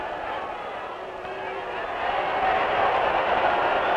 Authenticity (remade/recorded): remade